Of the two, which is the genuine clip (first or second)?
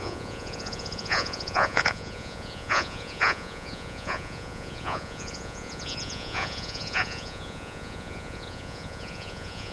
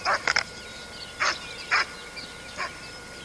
second